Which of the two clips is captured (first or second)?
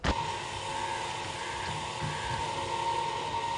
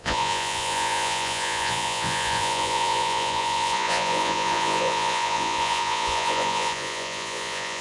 first